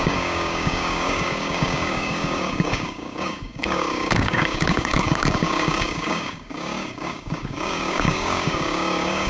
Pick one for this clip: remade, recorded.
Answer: remade